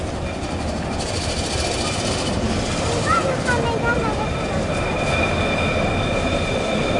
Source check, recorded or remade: recorded